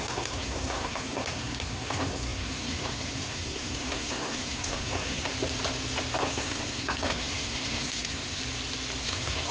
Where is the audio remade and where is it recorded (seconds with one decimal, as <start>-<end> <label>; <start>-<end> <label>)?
0.0-5.3 remade; 5.3-6.2 recorded; 6.2-8.4 remade; 8.4-9.0 recorded; 9.0-9.5 remade